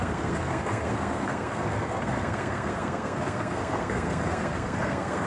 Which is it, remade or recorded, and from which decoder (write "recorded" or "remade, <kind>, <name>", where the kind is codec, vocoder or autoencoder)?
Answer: remade, codec, SNAC